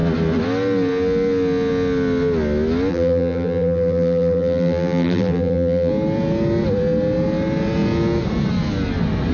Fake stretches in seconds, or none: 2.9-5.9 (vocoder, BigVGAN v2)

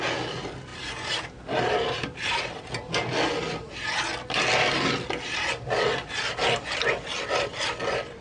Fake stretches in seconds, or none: none

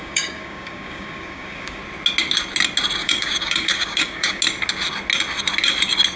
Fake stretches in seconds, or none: 0.0-1.8 (codec, DAC); 3.0-4.4